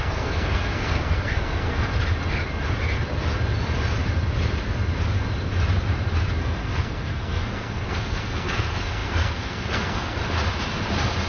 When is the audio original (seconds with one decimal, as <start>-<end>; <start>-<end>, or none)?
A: 1.9-6.4; 10.2-11.3